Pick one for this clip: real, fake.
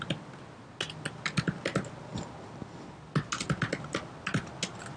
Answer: real